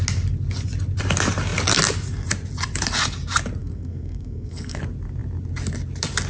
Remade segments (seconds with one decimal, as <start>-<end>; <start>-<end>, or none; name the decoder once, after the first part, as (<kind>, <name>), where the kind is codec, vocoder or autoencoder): 3.6-4.8 (codec, SNAC)